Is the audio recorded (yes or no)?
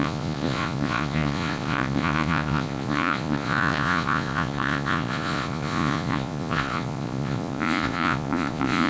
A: no